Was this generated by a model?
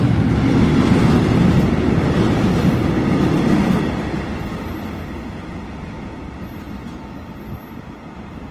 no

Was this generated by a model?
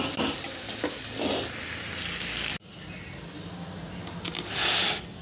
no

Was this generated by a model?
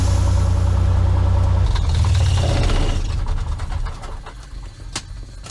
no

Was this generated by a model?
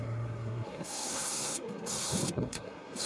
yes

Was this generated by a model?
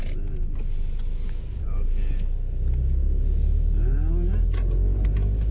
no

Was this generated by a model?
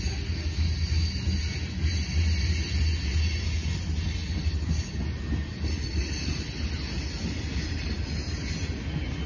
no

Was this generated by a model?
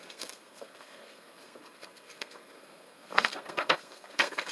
yes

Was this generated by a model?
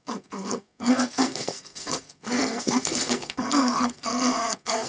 yes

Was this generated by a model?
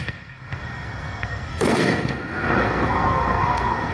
yes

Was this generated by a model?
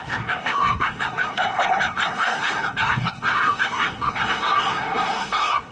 yes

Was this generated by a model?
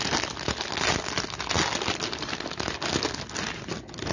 no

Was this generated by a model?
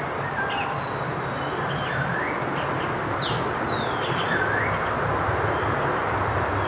no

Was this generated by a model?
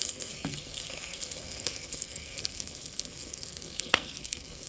yes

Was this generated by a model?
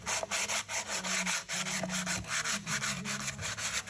no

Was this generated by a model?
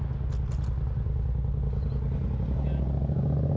no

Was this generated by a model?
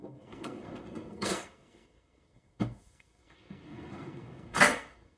yes